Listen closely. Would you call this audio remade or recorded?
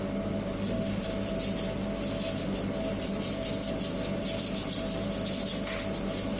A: recorded